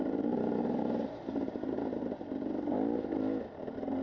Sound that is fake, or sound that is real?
real